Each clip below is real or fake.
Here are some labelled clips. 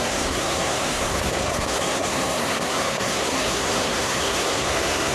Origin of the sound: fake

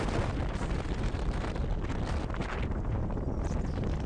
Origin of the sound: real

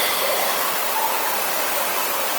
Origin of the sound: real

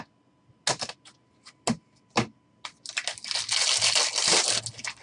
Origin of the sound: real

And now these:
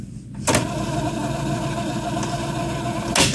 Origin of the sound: real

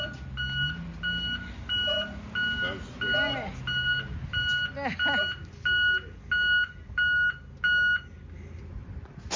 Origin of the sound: real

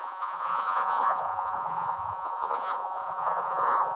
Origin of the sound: fake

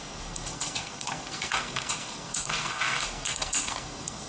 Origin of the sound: fake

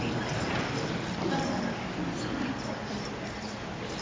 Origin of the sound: real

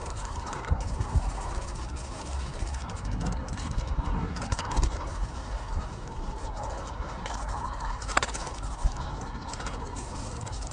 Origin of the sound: fake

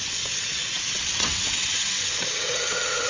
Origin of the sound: fake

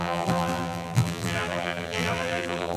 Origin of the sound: fake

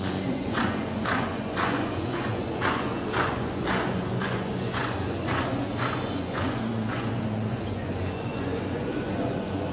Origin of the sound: fake